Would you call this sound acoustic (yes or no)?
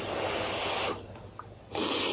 yes